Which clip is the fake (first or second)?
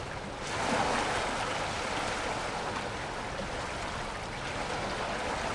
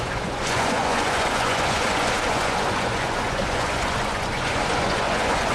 second